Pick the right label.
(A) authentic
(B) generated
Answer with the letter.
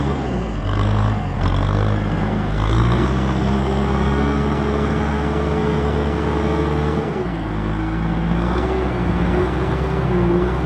B